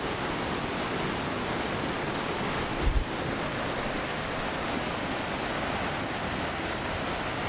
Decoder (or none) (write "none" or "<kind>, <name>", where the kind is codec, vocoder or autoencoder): none